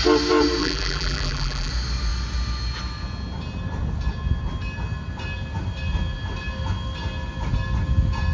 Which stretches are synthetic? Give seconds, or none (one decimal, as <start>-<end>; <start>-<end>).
0.6-1.7